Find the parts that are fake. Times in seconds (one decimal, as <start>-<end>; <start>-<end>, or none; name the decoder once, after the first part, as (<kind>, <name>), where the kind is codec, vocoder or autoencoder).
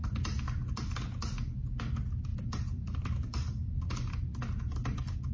2.3-3.7 (vocoder, BigVGAN v2)